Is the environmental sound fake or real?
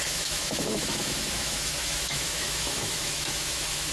fake